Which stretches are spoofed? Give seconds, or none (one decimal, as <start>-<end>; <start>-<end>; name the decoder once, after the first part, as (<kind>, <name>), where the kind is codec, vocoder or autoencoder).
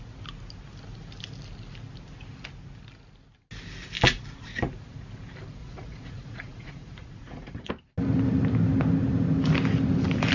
5.6-7.7 (vocoder, Vocos)